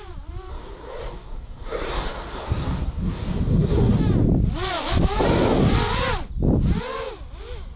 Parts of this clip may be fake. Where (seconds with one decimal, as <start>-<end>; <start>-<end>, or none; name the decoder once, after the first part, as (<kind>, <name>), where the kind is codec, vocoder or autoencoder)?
0.5-4.0 (codec, SNAC)